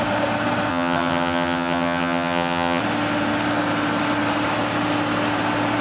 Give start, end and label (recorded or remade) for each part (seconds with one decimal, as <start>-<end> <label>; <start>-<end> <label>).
0.0-0.7 recorded; 0.7-2.8 remade; 2.8-5.8 recorded